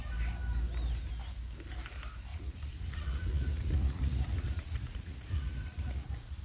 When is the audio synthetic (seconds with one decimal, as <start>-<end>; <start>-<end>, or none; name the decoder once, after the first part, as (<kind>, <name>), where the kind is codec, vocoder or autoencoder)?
2.3-6.4 (vocoder, Vocos)